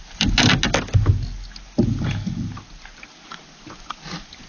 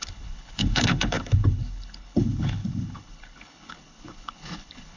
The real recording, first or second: first